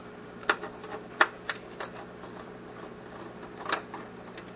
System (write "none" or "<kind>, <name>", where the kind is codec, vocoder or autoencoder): none